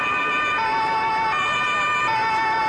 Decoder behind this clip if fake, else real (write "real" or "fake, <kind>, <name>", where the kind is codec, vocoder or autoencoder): real